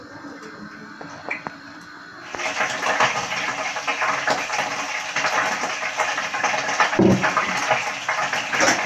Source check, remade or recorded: recorded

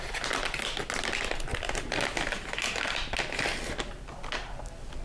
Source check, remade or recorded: recorded